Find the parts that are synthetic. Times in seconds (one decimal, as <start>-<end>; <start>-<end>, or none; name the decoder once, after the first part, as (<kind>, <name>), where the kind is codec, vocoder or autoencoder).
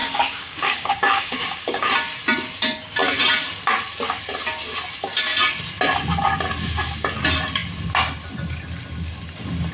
0.0-1.9 (codec, DAC)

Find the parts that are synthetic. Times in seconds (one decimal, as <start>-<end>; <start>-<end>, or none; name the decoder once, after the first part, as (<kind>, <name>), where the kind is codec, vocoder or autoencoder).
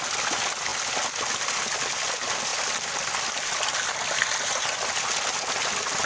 none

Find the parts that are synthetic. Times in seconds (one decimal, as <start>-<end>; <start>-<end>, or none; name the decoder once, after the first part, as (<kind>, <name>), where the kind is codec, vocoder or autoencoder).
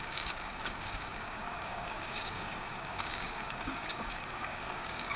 0.0-5.2 (codec, DAC)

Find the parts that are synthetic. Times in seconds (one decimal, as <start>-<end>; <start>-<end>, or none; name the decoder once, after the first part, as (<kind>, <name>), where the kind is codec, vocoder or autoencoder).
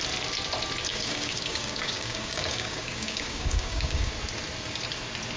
0.9-4.1 (codec, DAC)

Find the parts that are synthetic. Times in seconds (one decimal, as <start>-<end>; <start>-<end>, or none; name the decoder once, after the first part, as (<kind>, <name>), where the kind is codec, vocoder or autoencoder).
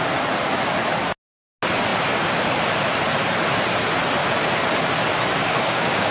5.4-6.1 (codec, DAC)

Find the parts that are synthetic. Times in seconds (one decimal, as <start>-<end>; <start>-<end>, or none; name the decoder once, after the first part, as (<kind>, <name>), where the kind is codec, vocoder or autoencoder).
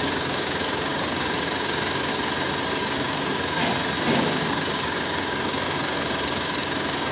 0.0-2.1 (codec, DAC); 2.8-3.6; 4.5-7.1